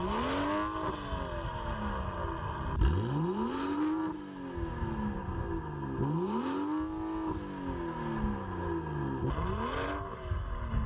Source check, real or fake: real